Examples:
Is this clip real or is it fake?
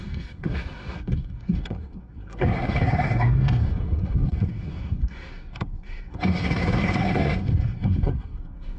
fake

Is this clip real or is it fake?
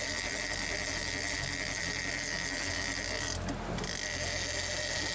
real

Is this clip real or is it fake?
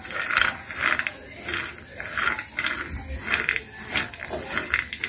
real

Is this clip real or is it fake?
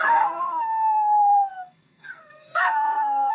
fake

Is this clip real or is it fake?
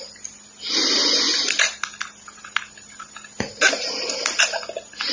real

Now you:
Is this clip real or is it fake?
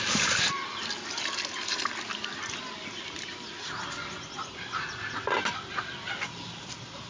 real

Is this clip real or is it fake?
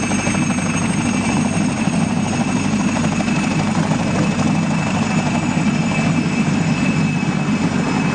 real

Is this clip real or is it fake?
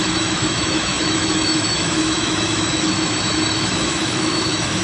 fake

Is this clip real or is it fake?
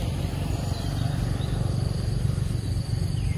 fake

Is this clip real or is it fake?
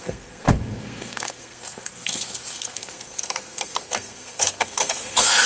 fake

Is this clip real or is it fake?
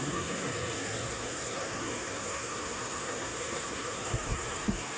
fake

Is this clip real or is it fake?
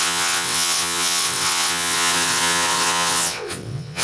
fake